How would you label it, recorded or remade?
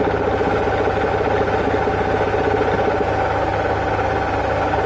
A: recorded